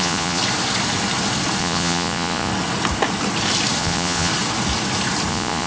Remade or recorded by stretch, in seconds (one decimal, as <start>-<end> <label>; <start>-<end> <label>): 0.0-0.4 remade; 0.4-1.6 recorded; 1.6-2.5 remade; 2.5-3.8 recorded; 3.8-4.3 remade; 4.3-5.3 recorded; 5.3-5.7 remade